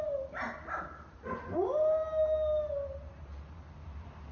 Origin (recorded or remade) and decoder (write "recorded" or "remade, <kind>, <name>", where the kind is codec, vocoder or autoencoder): recorded